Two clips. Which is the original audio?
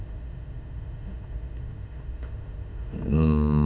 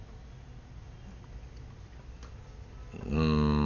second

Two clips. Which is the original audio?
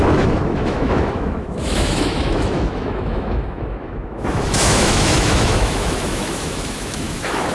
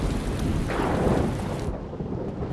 second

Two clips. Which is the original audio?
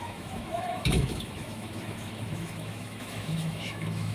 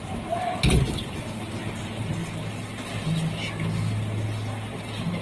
second